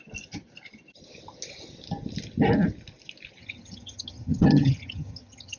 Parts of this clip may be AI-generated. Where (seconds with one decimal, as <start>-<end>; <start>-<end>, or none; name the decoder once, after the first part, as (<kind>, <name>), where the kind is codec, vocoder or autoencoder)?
3.4-5.6 (vocoder, HiFi-GAN)